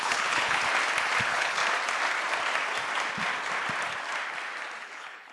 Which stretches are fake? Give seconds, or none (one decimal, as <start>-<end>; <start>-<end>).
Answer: 0.0-0.6; 1.2-1.6; 4.8-5.3